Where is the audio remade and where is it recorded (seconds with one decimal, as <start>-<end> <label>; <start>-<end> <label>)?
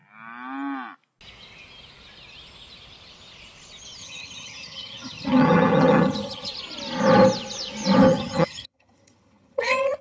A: 0.0-4.0 recorded; 4.0-6.5 remade; 6.5-8.1 recorded; 8.1-10.0 remade